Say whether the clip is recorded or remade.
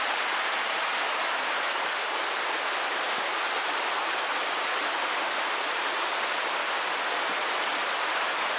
recorded